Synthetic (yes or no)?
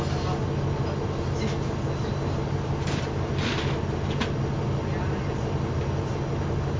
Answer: no